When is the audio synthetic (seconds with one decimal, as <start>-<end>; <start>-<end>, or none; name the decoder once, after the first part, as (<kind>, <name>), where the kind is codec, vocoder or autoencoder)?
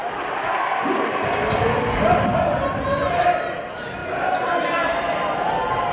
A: none